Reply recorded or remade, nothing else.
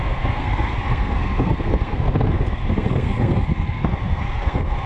remade